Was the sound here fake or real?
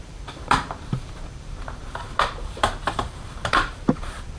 fake